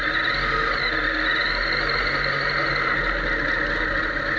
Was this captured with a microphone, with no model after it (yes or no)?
yes